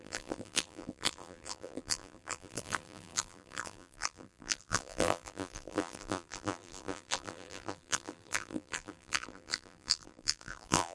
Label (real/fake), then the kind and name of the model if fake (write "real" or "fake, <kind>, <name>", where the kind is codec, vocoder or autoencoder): fake, vocoder, BigVGAN v2